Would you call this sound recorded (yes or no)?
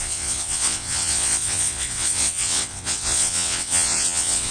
no